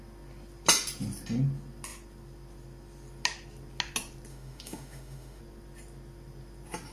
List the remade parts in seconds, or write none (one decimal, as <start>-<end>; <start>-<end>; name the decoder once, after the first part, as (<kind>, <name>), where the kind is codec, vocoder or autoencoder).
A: 4.3-5.4 (autoencoder, DAC-VAE)